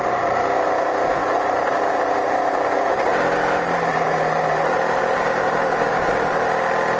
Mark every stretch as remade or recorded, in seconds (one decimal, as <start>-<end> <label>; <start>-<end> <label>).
0.0-1.2 recorded; 1.2-1.9 remade; 1.9-3.9 recorded; 3.9-6.1 remade; 6.1-7.0 recorded

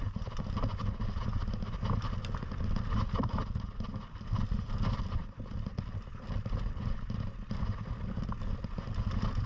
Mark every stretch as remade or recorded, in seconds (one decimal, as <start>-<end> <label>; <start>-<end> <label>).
0.0-9.5 recorded

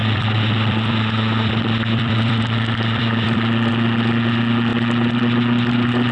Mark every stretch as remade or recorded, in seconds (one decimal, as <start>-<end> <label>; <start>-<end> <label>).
0.0-3.7 remade; 3.7-4.7 recorded; 4.7-5.2 remade; 5.2-6.1 recorded

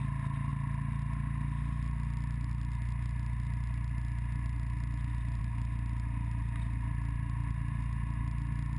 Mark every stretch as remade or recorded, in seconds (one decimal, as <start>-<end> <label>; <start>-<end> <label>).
0.0-8.8 recorded